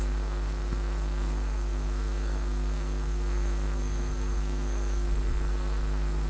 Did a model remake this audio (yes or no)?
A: yes